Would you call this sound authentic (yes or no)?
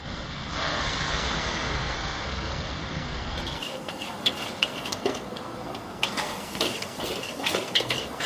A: no